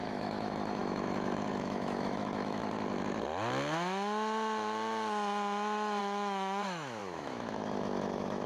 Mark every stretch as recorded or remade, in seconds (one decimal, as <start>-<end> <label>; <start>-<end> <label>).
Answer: 0.0-2.6 remade; 2.6-6.0 recorded; 6.0-8.5 remade